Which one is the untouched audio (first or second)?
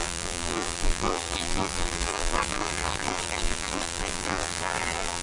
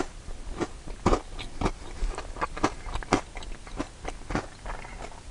second